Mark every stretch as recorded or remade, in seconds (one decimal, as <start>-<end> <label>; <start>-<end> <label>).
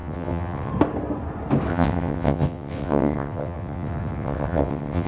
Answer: 0.0-0.7 remade; 0.7-1.7 recorded; 1.7-5.1 remade